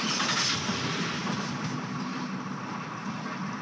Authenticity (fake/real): real